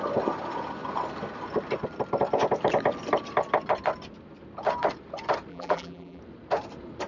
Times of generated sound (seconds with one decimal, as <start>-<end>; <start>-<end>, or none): 5.5-6.2